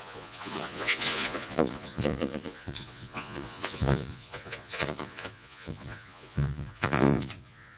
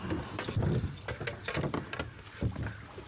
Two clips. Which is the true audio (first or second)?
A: second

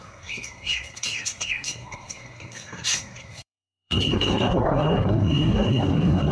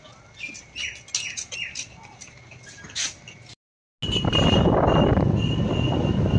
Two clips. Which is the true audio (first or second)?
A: second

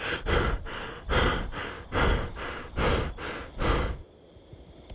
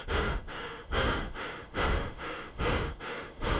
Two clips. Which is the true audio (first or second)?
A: first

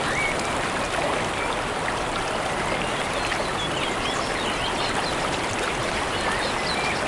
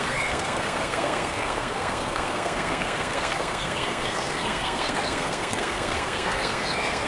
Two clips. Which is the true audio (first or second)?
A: first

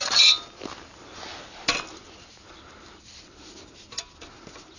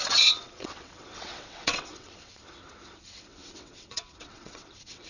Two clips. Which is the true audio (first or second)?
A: first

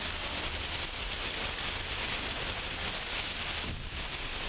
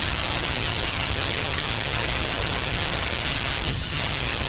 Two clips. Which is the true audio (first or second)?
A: first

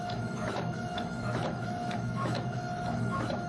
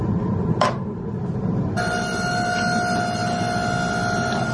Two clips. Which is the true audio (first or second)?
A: second